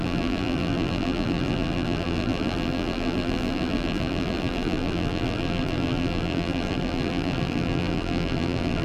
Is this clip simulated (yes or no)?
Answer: yes